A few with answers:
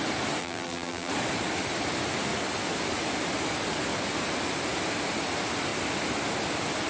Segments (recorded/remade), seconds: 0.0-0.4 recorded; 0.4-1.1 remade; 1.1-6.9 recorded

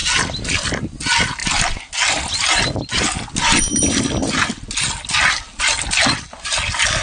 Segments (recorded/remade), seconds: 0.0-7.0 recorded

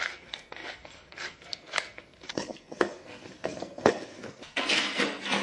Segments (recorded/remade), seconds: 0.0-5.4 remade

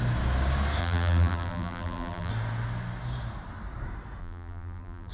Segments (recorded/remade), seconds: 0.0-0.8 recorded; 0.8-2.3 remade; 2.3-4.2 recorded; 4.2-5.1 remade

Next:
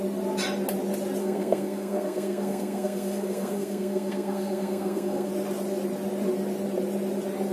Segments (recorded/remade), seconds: 0.0-1.2 recorded; 1.2-5.3 remade; 5.3-7.5 recorded

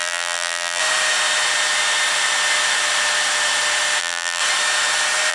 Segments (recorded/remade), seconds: 0.0-0.8 remade; 0.8-4.0 recorded; 4.0-4.4 remade; 4.4-5.3 recorded

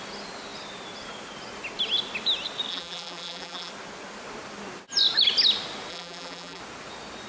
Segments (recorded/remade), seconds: 0.0-2.7 recorded; 2.7-3.7 remade; 3.7-5.9 recorded; 5.9-6.6 remade; 6.6-7.3 recorded

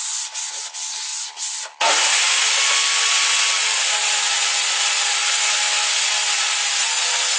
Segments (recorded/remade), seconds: 0.0-7.4 recorded